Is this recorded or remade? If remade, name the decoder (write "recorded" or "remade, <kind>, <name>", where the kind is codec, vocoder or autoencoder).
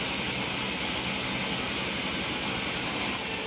recorded